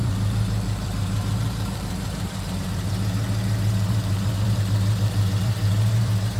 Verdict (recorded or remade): remade